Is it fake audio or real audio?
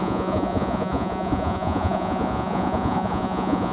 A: fake